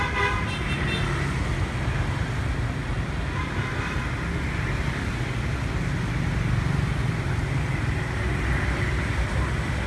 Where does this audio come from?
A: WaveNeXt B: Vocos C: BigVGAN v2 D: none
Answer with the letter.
D